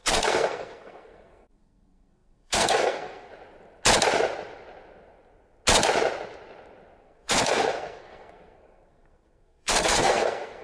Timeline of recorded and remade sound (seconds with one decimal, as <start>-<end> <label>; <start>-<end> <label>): 0.0-3.3 remade; 3.3-7.0 recorded; 7.0-10.6 remade